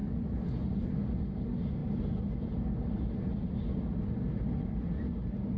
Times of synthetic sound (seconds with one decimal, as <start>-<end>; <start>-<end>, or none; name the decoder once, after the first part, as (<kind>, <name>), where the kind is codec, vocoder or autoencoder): 0.0-0.9 (vocoder, BigVGAN v2)